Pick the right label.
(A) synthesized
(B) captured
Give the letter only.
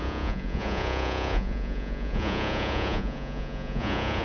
A